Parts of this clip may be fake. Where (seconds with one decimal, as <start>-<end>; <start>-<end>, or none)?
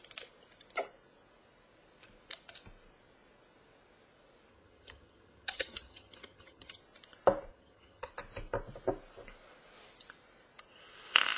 4.5-6.8; 7.5-8.1